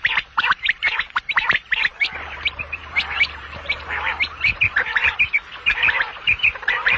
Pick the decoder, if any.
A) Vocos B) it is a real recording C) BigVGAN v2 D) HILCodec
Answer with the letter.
C